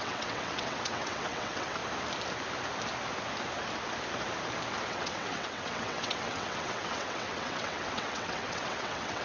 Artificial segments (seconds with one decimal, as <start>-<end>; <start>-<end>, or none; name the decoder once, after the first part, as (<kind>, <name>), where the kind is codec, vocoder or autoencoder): 0.0-1.8 (vocoder, WaveNeXt); 4.8-9.2